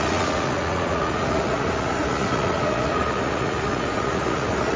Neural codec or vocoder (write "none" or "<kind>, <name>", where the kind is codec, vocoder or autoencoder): vocoder, Vocos